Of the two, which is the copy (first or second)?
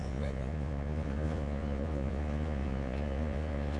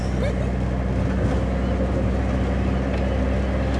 first